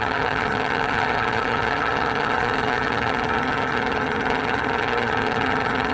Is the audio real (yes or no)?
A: no